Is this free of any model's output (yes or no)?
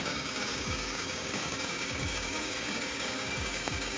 no